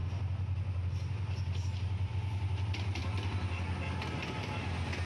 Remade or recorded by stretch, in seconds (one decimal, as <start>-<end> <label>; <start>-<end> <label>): 0.0-5.1 recorded